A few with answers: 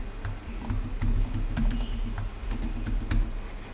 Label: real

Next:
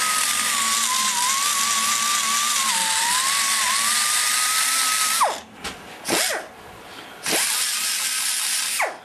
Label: real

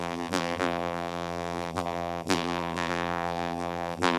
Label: fake